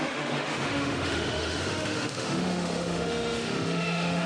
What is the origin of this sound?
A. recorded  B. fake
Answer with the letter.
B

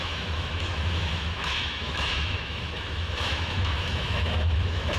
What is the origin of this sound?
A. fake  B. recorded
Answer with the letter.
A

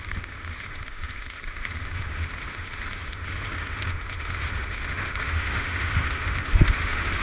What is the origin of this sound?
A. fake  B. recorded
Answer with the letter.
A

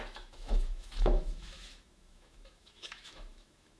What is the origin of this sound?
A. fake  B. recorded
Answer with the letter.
A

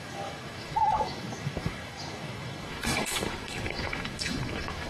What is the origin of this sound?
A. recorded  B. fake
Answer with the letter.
B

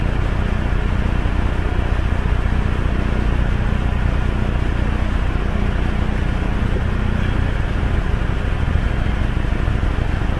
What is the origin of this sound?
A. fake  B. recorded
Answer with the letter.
B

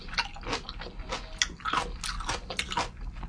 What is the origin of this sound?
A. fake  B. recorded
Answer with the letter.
B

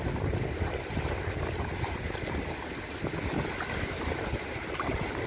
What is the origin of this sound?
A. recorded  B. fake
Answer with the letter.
A